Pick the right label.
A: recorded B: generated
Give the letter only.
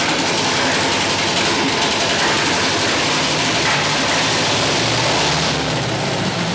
A